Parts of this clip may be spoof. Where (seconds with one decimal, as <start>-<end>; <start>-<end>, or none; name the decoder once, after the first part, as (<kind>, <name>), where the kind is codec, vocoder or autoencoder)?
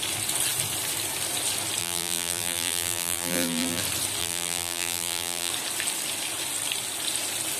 1.8-3.8 (vocoder, BigVGAN v2); 4.2-5.5